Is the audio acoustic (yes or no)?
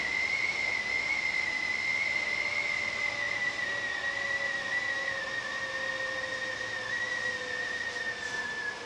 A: yes